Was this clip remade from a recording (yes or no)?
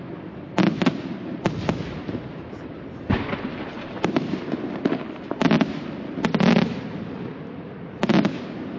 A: no